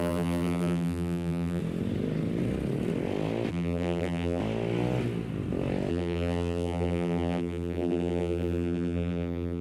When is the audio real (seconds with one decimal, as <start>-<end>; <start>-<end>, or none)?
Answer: 1.6-3.5; 4.4-5.9